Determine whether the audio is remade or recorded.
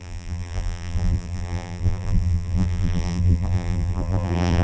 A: remade